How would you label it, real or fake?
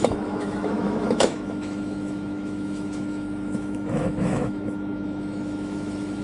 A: fake